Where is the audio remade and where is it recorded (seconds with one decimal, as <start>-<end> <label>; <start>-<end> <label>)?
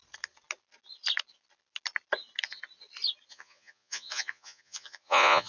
0.0-3.3 recorded; 3.3-5.5 remade